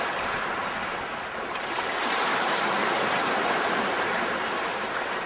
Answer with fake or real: fake